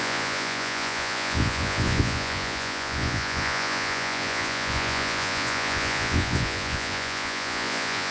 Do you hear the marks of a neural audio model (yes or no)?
yes